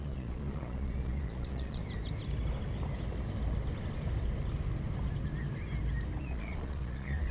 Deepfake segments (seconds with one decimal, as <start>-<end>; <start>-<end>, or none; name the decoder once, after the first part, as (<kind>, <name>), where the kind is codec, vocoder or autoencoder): 0.0-1.8 (vocoder, Vocos); 6.2-7.3